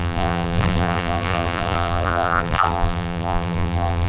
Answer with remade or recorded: remade